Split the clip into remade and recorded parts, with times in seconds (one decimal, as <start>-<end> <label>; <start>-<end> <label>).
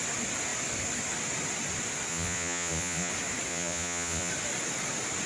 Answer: 0.0-2.1 recorded; 2.1-3.1 remade; 3.1-3.5 recorded; 3.5-4.3 remade; 4.3-5.3 recorded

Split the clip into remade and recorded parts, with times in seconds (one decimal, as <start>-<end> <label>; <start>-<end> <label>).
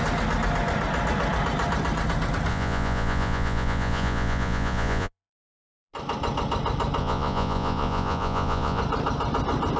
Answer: 0.0-2.5 recorded; 2.5-5.9 remade; 5.9-7.0 recorded; 7.0-8.8 remade; 8.8-9.8 recorded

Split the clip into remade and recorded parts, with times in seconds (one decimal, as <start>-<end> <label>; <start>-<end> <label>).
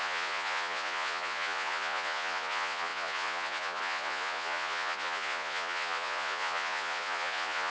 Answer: 0.0-7.7 remade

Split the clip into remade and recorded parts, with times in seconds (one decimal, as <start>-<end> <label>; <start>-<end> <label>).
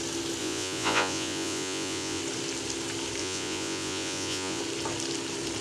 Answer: 0.0-0.4 recorded; 0.4-2.2 remade; 2.2-3.2 recorded; 3.2-4.6 remade; 4.6-5.6 recorded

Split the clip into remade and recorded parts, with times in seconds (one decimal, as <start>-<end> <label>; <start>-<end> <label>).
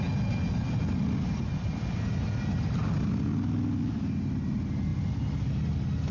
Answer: 0.0-6.1 recorded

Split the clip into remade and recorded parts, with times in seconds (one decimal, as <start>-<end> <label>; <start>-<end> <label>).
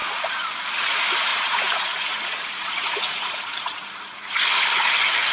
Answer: 0.0-0.5 remade; 0.5-1.3 recorded; 1.3-4.5 remade; 4.5-5.3 recorded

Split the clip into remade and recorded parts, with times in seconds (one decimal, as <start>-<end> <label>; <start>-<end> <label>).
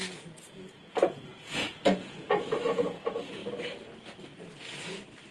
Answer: 0.0-3.4 remade; 3.4-5.3 recorded